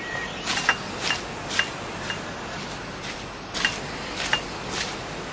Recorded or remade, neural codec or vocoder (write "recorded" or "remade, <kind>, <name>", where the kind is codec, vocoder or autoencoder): recorded